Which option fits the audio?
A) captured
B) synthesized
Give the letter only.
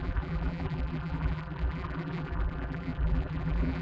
B